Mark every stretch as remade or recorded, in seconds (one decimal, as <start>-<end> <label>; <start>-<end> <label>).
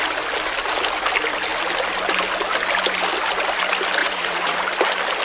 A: 0.0-4.0 recorded; 4.0-4.6 remade; 4.6-5.2 recorded